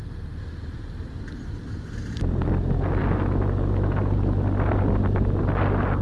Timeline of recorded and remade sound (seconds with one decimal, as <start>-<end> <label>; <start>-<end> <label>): 0.0-6.0 recorded